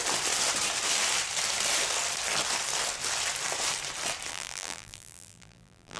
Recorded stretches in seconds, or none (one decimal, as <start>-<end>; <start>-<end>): 0.0-4.3